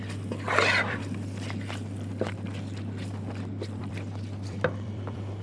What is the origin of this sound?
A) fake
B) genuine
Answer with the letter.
A